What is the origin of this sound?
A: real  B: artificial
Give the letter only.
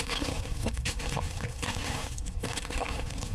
B